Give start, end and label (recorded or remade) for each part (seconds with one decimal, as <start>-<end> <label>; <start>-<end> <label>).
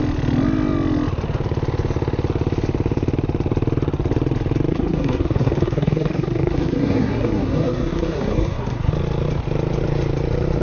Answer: 0.0-4.7 recorded; 4.7-8.9 remade; 8.9-10.6 recorded